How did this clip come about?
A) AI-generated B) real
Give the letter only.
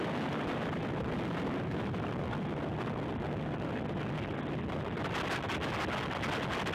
B